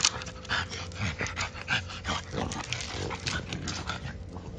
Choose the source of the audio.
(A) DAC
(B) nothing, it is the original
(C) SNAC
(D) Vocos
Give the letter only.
B